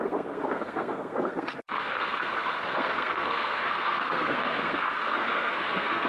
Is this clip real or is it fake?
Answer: fake